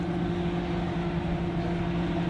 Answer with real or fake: real